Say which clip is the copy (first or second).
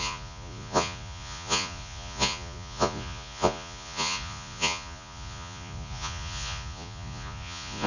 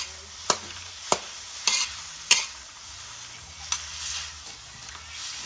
first